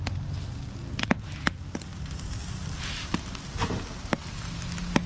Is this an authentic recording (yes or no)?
yes